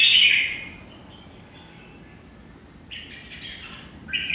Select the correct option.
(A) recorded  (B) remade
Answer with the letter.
A